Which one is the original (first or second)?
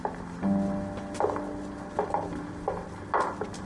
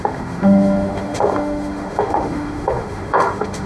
first